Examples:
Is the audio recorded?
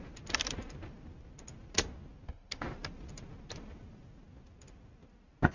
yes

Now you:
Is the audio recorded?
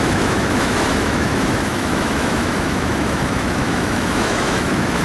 no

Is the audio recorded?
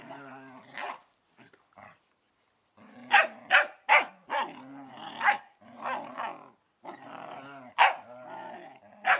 yes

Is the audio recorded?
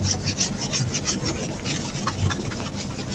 yes